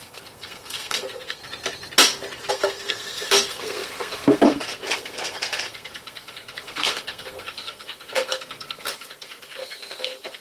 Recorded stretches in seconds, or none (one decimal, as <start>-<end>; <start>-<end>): 1.4-2.5